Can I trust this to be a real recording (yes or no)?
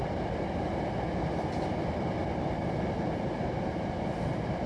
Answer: yes